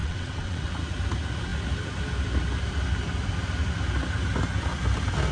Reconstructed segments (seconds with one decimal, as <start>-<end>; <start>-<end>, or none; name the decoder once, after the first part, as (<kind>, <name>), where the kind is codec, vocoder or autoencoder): 0.0-0.7 (vocoder, WaveNeXt)